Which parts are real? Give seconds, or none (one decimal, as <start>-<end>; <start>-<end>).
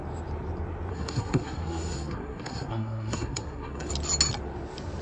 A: 0.0-0.9; 3.9-5.0